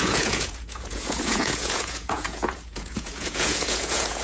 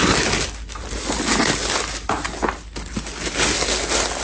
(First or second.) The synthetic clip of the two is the first